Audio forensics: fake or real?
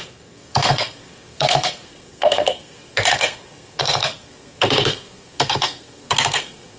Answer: fake